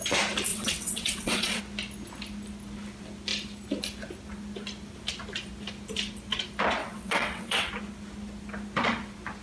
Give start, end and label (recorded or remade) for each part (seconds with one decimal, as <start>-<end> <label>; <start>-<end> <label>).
0.0-0.5 recorded; 0.5-1.6 remade; 1.6-6.8 recorded; 6.8-7.7 remade; 7.7-9.4 recorded